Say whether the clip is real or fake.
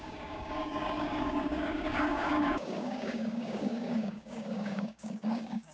fake